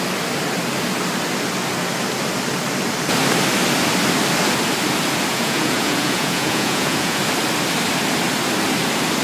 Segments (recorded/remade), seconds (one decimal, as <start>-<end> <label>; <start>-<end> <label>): 0.0-5.3 recorded; 5.3-7.2 remade; 7.2-9.2 recorded